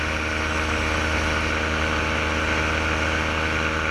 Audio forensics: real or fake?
real